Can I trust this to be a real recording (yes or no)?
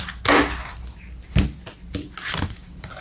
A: yes